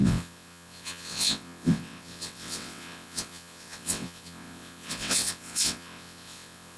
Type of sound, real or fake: fake